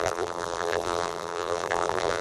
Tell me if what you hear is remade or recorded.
remade